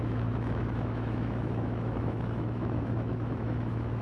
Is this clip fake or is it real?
fake